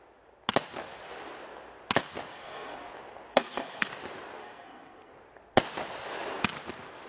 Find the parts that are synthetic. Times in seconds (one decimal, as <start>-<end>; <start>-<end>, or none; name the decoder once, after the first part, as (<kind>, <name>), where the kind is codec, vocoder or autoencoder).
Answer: 2.3-2.9 (codec, SNAC); 3.3-3.9; 4.4-5.1